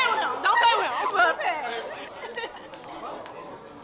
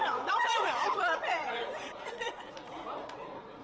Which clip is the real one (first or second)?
first